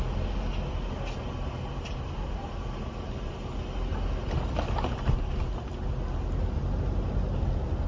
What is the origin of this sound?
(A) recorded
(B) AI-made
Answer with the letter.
A